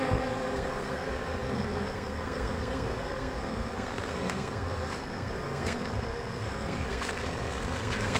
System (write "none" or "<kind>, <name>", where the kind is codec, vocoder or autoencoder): codec, SNAC